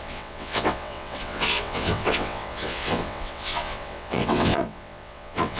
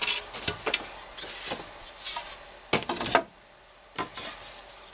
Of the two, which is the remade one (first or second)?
first